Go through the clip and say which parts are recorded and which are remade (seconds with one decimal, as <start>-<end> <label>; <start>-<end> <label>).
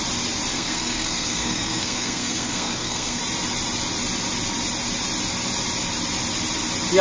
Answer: 0.0-0.5 recorded; 0.5-3.2 remade; 3.2-7.0 recorded